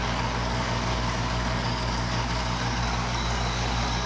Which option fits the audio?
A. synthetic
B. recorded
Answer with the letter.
A